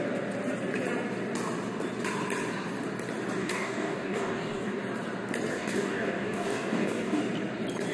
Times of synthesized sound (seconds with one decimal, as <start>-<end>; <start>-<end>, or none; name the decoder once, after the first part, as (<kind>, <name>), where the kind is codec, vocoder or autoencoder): 3.4-4.8 (codec, DAC); 5.5-7.2